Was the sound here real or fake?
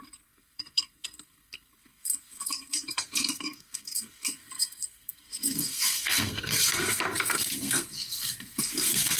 fake